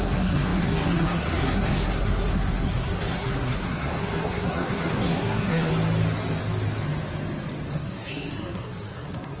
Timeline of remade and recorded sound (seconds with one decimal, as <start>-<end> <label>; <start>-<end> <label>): 0.0-5.7 remade; 5.7-7.7 recorded; 7.7-9.4 remade

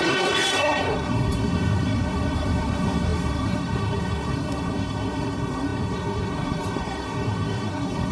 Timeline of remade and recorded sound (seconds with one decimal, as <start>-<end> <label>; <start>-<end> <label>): 0.0-8.1 remade

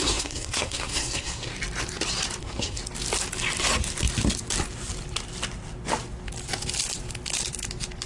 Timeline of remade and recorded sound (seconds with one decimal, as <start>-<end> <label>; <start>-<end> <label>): 0.0-1.5 remade; 1.5-2.4 recorded; 2.4-2.8 remade; 2.8-8.1 recorded

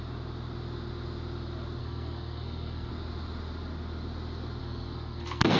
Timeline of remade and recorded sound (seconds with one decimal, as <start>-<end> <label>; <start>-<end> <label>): 0.0-1.8 recorded; 1.8-2.9 remade; 2.9-4.6 recorded; 4.6-5.6 remade

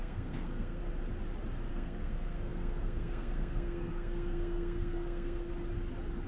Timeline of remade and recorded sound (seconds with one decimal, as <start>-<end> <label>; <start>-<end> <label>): 0.0-0.8 remade; 0.8-1.7 recorded; 1.7-5.5 remade; 5.5-6.3 recorded

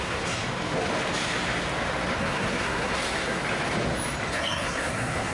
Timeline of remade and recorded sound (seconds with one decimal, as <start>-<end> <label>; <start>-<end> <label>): 0.0-0.4 remade; 0.4-2.2 recorded; 2.2-3.4 remade; 3.4-4.3 recorded; 4.3-5.3 remade

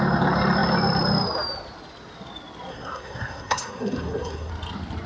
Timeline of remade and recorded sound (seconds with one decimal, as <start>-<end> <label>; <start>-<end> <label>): 0.0-2.7 recorded; 2.7-4.5 remade; 4.5-5.1 recorded